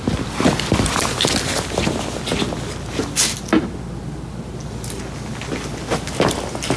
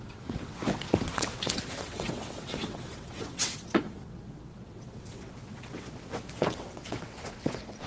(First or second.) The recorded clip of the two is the first